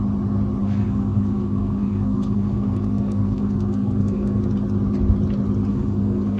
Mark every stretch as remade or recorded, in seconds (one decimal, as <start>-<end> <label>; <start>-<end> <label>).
0.0-0.6 recorded; 0.6-4.4 remade; 4.4-5.7 recorded; 5.7-6.4 remade

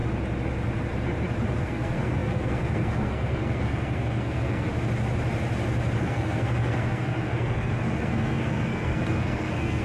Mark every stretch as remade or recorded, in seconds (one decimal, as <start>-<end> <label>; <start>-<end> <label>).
0.0-1.6 recorded; 1.6-4.7 remade; 4.7-6.0 recorded; 6.0-9.8 remade

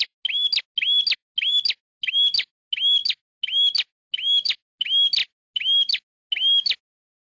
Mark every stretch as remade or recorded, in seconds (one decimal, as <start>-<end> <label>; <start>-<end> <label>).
0.0-7.4 recorded

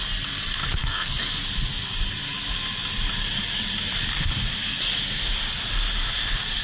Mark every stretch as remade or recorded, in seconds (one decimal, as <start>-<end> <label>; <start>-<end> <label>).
0.0-0.8 recorded; 0.8-1.4 remade; 1.4-6.6 recorded

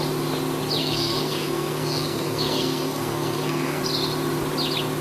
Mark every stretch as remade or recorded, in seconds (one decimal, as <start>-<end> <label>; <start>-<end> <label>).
0.0-0.8 recorded; 0.8-3.8 remade; 3.8-5.0 recorded

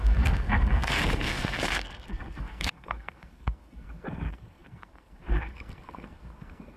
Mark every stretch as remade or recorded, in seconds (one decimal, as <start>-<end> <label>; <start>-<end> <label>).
0.0-6.8 remade

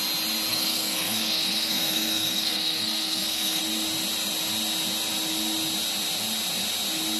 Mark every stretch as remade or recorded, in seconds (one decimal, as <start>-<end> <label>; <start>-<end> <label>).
0.0-0.5 recorded; 0.5-3.6 remade; 3.6-7.2 recorded